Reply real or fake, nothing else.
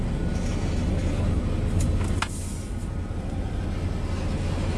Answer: real